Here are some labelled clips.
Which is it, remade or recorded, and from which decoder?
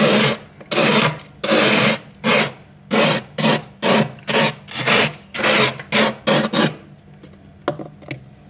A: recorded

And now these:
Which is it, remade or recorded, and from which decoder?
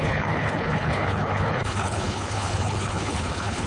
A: remade, codec, HILCodec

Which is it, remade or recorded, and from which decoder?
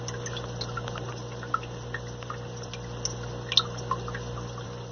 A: recorded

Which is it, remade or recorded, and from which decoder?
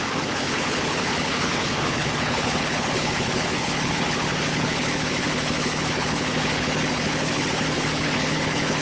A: remade, codec, HILCodec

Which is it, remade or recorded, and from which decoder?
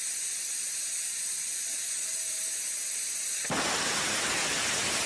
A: recorded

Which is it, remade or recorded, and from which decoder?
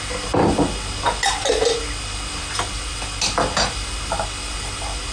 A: recorded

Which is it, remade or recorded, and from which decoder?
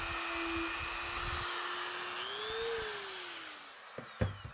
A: recorded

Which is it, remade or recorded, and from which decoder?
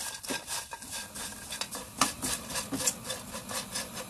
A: recorded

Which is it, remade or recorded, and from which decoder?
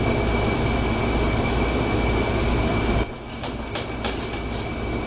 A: recorded